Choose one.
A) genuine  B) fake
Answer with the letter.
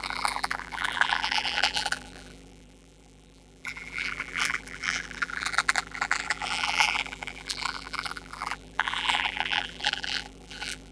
B